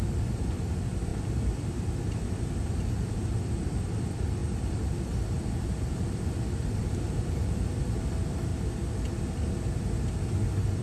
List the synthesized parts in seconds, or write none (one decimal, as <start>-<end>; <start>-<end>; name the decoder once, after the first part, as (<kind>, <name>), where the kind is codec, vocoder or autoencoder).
0.0-8.5 (vocoder, BigVGAN v2)